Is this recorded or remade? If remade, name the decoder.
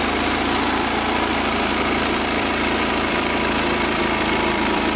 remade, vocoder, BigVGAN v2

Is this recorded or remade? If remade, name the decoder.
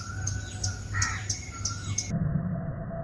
recorded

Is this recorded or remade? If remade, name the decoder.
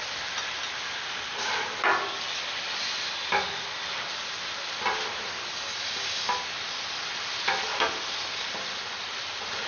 recorded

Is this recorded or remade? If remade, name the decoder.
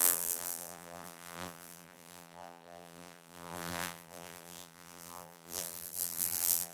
remade, vocoder, BigVGAN v2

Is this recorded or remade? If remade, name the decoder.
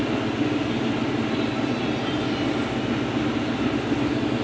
recorded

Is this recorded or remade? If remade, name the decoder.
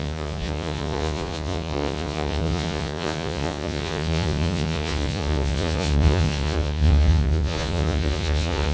remade, vocoder, Vocos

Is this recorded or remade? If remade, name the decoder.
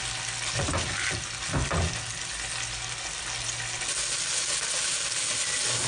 recorded